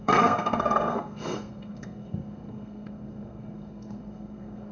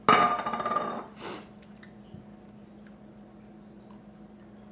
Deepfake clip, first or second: first